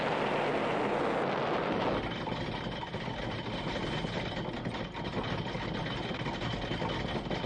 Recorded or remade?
recorded